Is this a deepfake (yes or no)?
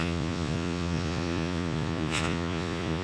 yes